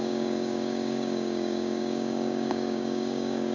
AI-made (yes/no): yes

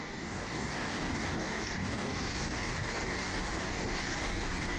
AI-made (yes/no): yes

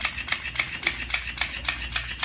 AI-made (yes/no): no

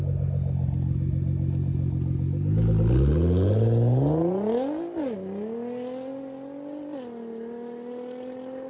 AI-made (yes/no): no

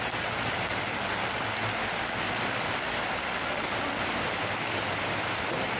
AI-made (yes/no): no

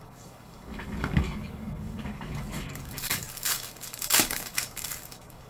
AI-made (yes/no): yes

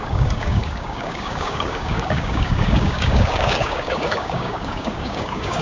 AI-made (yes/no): yes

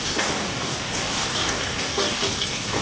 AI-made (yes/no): yes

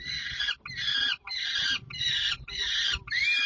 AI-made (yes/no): no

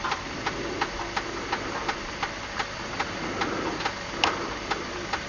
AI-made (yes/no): no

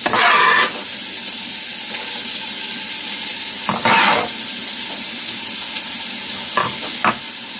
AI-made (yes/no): no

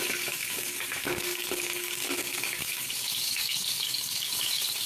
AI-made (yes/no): yes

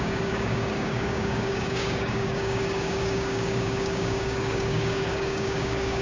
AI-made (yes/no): yes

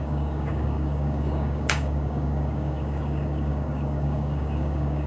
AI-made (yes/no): yes